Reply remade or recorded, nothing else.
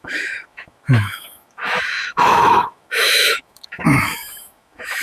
remade